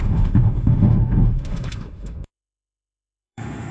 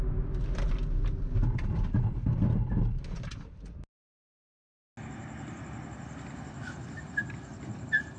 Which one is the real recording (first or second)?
second